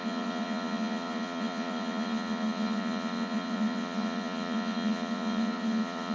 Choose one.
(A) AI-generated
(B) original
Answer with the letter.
A